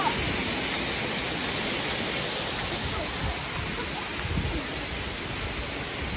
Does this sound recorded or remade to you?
recorded